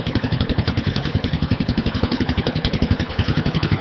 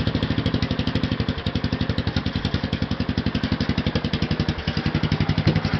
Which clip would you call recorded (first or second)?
second